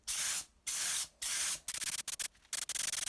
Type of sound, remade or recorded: recorded